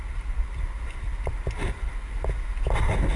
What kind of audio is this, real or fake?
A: real